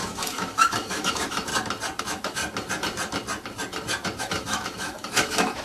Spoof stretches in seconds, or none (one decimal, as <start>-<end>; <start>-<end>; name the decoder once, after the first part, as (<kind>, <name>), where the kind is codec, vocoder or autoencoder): 0.0-1.5 (autoencoder, DAC-VAE); 2.0-2.4; 4.2-5.6